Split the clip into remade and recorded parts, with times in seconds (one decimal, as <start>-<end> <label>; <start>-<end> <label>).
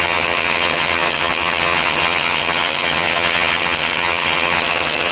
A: 0.0-5.1 remade